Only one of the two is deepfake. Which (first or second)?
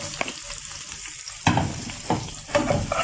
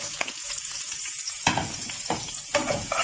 second